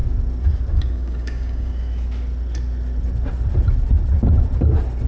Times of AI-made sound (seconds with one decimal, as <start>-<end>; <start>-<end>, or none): 0.7-1.7